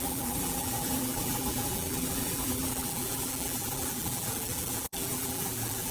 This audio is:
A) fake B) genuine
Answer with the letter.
A